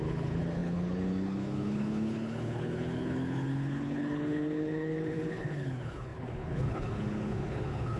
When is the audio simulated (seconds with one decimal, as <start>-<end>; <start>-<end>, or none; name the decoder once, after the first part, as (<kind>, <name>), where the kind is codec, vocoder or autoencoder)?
0.0-8.0 (codec, HILCodec)